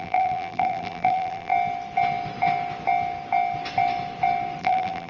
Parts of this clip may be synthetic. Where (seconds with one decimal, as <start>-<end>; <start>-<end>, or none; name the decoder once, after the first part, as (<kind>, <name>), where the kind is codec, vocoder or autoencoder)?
0.0-1.5 (vocoder, BigVGAN v2); 4.6-5.1